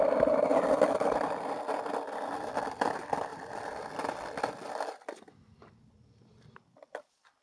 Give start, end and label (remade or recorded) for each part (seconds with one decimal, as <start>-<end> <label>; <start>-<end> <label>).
0.0-7.4 recorded